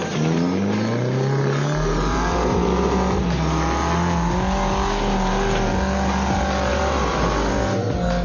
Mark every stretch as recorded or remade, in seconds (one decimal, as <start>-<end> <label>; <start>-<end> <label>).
0.0-6.7 recorded; 6.7-7.2 remade; 7.2-8.2 recorded